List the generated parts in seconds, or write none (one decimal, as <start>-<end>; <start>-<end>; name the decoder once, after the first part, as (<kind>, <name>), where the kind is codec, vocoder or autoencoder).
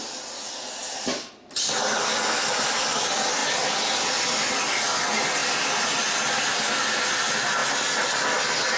none